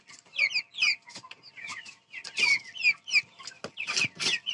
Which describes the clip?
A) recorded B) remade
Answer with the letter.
A